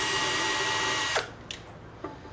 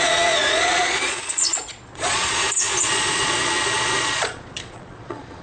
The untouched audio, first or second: first